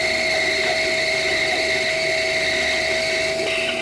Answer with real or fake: real